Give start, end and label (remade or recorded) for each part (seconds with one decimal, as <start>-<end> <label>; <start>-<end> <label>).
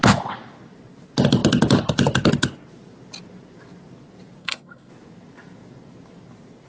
0.0-4.4 recorded; 4.4-4.9 remade; 4.9-6.7 recorded